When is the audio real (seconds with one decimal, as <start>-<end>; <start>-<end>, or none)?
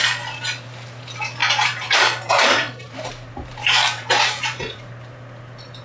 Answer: 0.0-1.4; 4.9-5.8